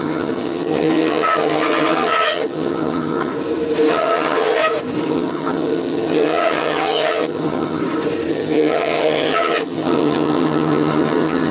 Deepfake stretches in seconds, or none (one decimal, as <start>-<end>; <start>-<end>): 0.0-3.3; 3.9-4.6; 5.1-7.8; 8.3-11.5